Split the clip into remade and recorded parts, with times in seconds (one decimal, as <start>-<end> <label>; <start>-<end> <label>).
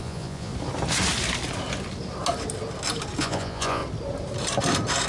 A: 0.0-0.5 remade; 0.5-3.2 recorded; 3.2-3.8 remade; 3.8-5.1 recorded